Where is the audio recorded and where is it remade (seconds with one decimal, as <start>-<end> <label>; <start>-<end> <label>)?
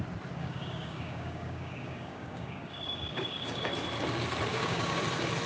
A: 0.0-0.4 recorded; 0.4-3.7 remade; 3.7-4.5 recorded; 4.5-5.0 remade; 5.0-5.5 recorded